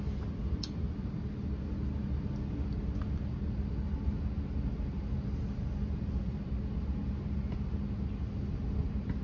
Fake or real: real